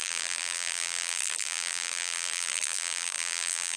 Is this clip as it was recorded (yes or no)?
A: no